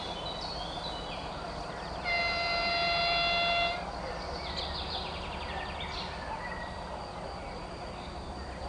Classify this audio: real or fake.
real